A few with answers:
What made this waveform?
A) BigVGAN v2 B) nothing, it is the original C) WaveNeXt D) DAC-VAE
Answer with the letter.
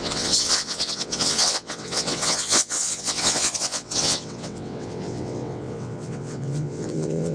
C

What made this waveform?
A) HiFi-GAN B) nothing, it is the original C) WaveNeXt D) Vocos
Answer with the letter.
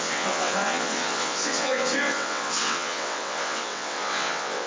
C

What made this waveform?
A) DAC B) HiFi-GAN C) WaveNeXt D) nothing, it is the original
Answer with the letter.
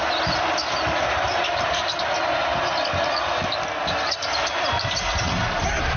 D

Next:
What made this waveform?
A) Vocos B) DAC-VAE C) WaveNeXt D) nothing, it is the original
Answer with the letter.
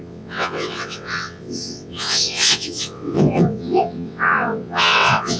C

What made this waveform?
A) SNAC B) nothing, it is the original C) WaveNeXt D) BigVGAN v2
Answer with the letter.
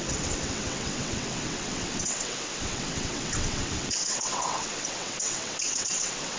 C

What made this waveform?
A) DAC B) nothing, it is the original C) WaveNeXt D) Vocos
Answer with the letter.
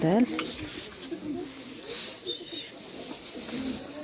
B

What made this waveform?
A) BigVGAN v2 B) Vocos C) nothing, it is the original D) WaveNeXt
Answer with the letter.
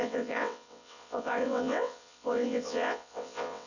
D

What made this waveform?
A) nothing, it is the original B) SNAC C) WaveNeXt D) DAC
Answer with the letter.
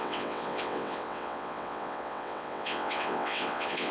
C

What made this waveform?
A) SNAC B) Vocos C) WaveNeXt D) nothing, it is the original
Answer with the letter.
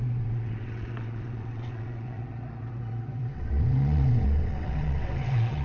C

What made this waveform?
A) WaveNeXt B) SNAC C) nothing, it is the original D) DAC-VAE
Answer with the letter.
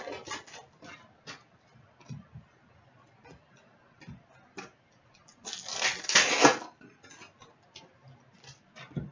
C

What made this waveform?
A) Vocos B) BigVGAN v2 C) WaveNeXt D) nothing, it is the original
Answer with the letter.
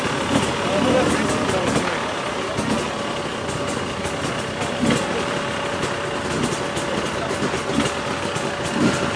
D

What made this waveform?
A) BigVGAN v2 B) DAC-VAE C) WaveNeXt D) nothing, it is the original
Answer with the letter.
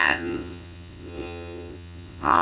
C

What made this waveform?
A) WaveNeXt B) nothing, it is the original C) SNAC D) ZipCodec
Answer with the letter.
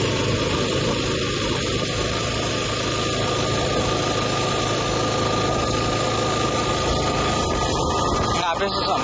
B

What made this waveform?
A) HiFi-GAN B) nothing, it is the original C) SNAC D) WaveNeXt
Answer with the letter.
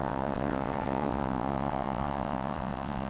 D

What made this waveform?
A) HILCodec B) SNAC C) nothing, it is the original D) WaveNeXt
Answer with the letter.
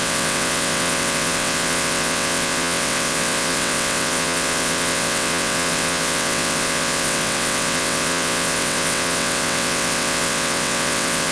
D